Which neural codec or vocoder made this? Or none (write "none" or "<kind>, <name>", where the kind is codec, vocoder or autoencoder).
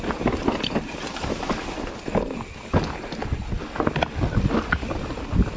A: none